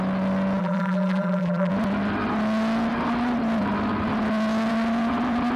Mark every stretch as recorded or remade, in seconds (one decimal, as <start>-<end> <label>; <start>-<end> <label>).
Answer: 0.0-0.6 recorded; 0.6-1.7 remade; 1.7-5.6 recorded